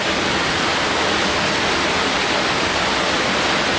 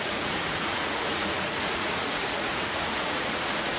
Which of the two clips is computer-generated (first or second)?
second